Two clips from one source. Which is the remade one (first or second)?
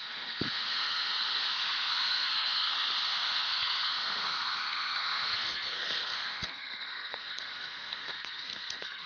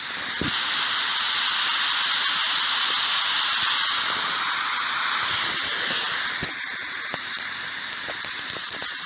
first